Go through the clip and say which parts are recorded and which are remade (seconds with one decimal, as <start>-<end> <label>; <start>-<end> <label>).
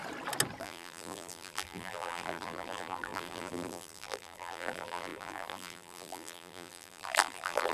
0.0-0.6 recorded; 0.6-7.7 remade